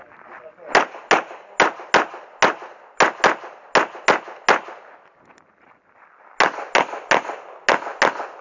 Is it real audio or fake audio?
real